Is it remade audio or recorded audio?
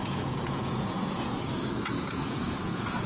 remade